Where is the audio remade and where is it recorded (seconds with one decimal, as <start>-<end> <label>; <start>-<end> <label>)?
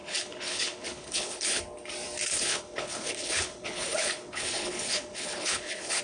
0.0-1.6 remade; 1.6-2.3 recorded; 2.3-6.0 remade